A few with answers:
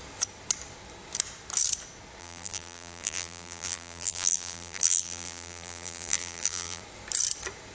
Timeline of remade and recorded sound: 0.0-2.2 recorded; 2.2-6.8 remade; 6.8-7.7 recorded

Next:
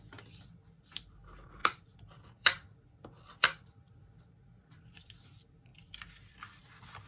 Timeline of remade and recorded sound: 0.0-1.6 recorded; 1.6-5.1 remade; 5.1-5.7 recorded; 5.7-6.6 remade; 6.6-7.1 recorded